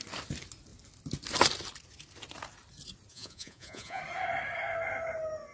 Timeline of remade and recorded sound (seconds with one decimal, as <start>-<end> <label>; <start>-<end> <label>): 0.0-3.1 recorded; 3.1-4.0 remade; 4.0-5.5 recorded